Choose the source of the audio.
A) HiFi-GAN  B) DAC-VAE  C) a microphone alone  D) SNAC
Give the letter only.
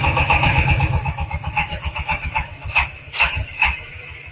B